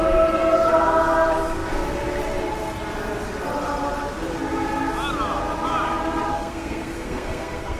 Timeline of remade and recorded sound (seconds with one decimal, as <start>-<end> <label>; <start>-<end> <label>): 0.0-6.3 recorded; 6.3-7.8 remade